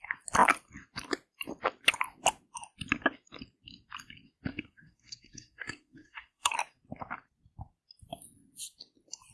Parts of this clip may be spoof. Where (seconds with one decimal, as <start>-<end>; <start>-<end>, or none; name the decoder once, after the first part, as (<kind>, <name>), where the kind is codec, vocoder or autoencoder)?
4.5-6.5 (codec, SNAC)